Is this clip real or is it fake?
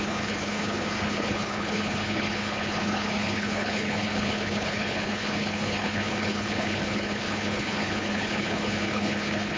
fake